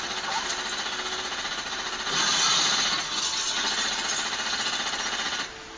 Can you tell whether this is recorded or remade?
recorded